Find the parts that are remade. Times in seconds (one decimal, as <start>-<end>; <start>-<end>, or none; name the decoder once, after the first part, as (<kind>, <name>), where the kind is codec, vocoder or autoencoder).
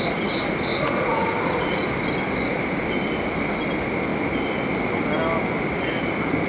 0.7-1.9 (vocoder, Vocos)